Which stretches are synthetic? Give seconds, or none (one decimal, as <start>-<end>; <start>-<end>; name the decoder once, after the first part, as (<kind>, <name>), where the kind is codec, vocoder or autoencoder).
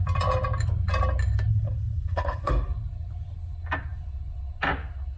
1.5-2.5 (codec, HILCodec)